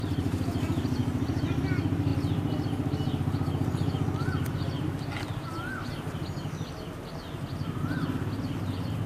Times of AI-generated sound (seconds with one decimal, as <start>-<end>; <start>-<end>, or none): none